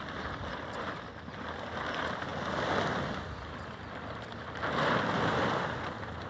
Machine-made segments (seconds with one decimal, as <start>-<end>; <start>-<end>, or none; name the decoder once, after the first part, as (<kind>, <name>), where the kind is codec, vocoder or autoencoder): none